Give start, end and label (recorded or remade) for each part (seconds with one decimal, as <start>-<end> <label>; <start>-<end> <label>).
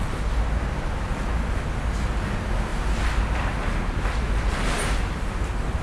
0.0-2.7 recorded; 2.7-5.8 remade